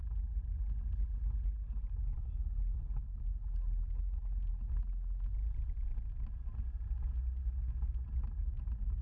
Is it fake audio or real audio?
real